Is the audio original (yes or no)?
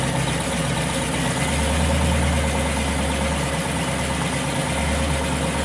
yes